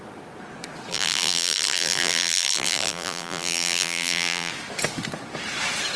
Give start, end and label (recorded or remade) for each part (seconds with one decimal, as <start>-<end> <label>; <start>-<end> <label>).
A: 0.0-0.9 recorded; 0.9-4.5 remade; 4.5-6.0 recorded